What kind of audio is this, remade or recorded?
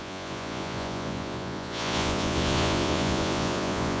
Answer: remade